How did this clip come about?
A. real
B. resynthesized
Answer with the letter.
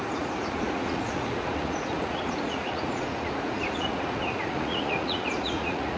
B